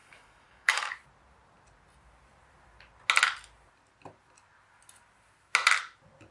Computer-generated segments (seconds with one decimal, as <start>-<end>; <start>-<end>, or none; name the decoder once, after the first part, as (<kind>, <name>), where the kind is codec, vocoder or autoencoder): 0.0-0.9 (codec, DAC)